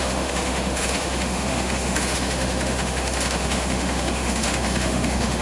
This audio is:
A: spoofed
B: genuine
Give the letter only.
A